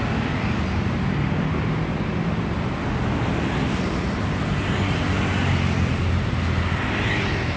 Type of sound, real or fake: real